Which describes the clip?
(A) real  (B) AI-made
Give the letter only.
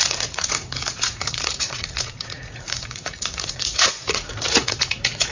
B